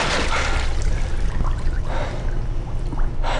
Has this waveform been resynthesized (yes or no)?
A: no